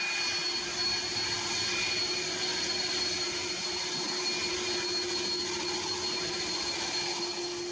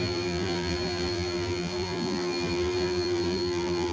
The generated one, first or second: second